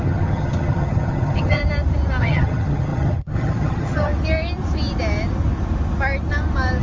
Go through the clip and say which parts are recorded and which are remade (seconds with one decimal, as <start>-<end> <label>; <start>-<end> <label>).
0.0-1.6 remade; 1.6-2.2 recorded; 2.2-4.1 remade; 4.1-6.8 recorded